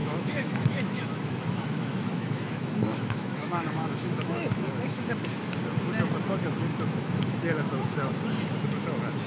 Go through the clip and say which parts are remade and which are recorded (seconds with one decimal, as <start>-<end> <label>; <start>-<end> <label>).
0.0-5.3 remade; 5.3-6.7 recorded; 6.7-8.2 remade; 8.2-9.3 recorded